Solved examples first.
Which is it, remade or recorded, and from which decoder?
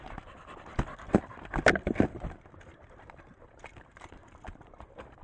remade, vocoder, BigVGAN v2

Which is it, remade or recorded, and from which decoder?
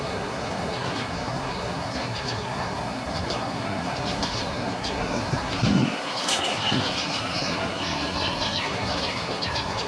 remade, codec, SNAC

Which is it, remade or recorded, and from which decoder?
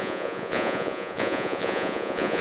remade, vocoder, Vocos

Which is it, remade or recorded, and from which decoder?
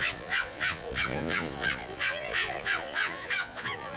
remade, vocoder, Vocos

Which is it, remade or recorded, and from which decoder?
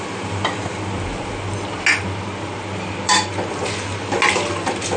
recorded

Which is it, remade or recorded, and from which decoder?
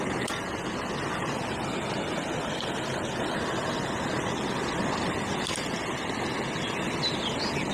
recorded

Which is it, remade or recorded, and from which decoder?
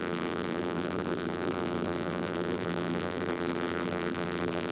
remade, vocoder, BigVGAN v2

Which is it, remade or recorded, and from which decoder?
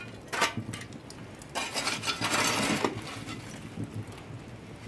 recorded